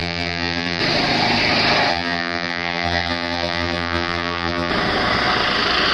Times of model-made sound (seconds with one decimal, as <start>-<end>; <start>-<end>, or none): 0.0-0.8; 1.9-4.7